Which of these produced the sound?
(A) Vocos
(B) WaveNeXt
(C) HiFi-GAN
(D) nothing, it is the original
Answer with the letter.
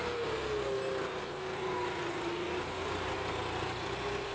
D